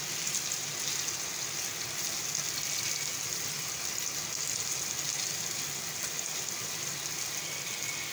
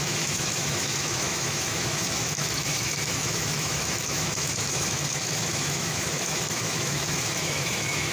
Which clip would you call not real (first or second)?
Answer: second